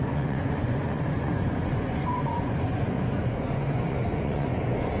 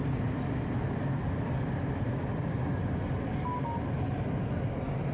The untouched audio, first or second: second